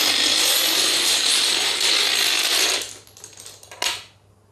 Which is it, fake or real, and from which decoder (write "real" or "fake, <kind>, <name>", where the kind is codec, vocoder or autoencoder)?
real